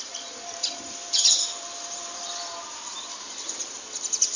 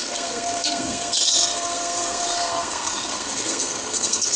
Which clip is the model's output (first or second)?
second